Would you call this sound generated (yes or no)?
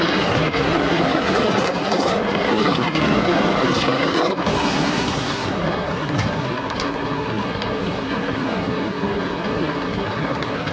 yes